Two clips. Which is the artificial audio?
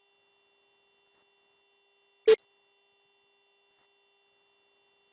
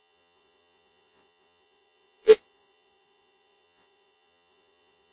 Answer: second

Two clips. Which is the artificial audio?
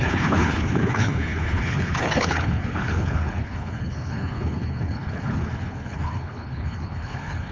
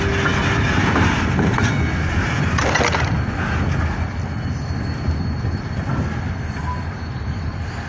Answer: first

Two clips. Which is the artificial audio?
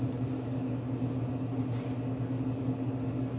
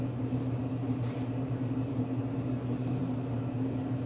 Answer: second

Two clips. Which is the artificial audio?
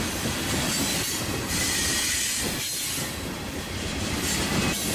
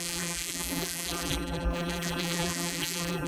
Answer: second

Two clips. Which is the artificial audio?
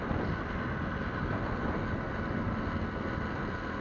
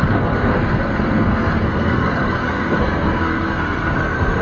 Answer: second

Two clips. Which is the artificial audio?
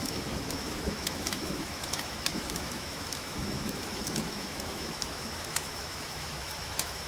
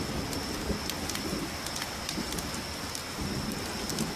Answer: first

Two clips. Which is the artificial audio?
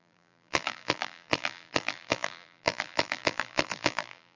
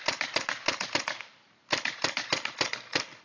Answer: first